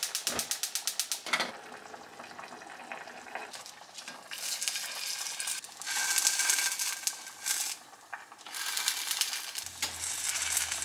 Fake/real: real